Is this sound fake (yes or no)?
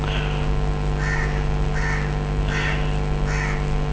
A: no